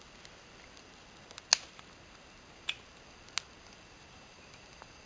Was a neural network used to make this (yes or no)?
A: no